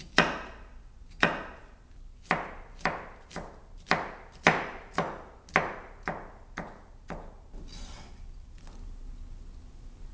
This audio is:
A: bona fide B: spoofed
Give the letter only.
A